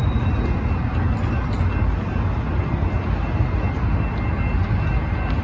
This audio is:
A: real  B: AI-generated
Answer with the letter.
A